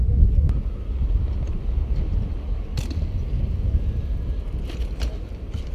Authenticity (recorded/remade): recorded